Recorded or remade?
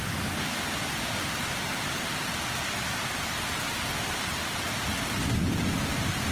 recorded